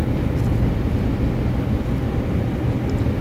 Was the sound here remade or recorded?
recorded